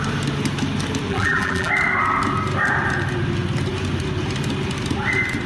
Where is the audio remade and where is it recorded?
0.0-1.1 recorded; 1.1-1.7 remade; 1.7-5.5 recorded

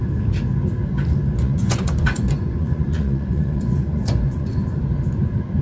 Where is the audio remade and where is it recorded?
0.0-1.4 recorded; 1.4-4.8 remade; 4.8-5.6 recorded

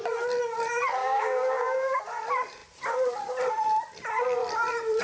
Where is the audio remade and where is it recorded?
0.0-1.0 recorded; 1.0-2.0 remade; 2.0-5.0 recorded

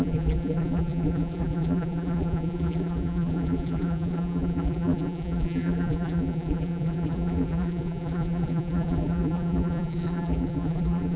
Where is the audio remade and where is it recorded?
0.0-11.2 remade